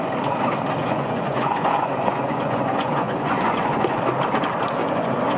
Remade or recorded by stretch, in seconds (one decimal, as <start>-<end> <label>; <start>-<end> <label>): 0.0-0.8 recorded; 0.8-4.0 remade; 4.0-4.8 recorded; 4.8-5.4 remade